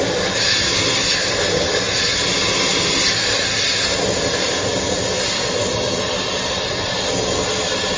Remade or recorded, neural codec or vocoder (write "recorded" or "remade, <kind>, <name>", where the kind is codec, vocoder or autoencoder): recorded